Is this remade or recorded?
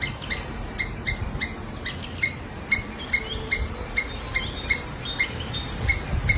recorded